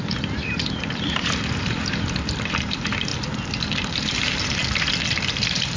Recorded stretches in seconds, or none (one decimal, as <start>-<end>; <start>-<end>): 4.6-5.3